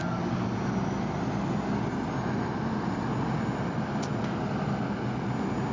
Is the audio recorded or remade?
recorded